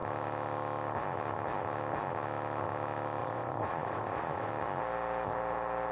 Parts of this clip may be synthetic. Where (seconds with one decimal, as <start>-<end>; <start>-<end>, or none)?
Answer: 3.2-4.5